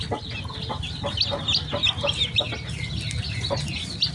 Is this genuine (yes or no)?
yes